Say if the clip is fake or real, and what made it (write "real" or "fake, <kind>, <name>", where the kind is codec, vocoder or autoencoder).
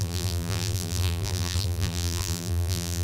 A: fake, vocoder, BigVGAN v2